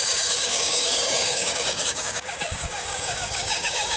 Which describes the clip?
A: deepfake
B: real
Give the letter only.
A